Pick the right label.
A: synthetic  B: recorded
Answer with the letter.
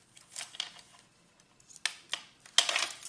B